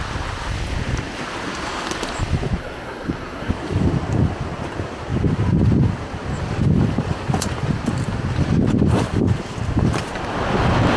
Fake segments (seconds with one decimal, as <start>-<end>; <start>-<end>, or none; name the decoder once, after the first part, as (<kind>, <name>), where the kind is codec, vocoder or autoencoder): 2.6-3.5 (codec, SNAC)